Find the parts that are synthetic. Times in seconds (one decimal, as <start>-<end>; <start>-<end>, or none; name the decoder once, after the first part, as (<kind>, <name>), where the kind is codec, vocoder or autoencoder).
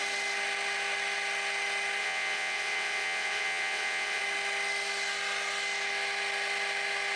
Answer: 2.0-4.2 (vocoder, WaveNeXt)